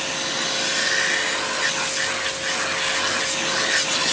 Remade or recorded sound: recorded